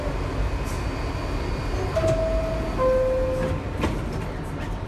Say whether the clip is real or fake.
real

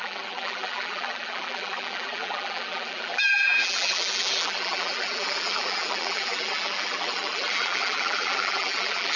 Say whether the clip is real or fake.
fake